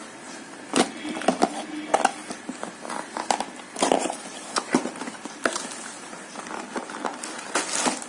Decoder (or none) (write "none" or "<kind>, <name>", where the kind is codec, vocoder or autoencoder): none